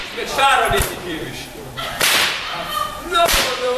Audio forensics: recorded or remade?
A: remade